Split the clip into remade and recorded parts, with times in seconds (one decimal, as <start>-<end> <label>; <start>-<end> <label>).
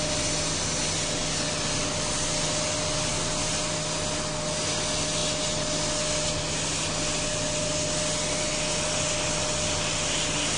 0.0-10.6 recorded